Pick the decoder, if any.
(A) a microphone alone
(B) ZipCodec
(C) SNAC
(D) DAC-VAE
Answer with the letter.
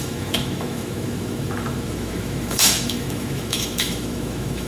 D